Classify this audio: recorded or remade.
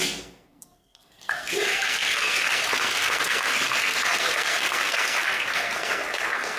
remade